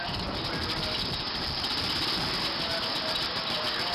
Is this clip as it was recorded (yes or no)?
yes